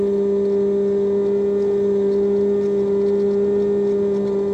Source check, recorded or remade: recorded